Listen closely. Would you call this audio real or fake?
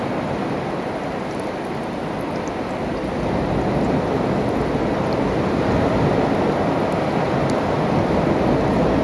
real